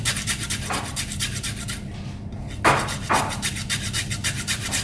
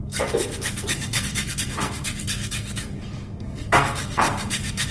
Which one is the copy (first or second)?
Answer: second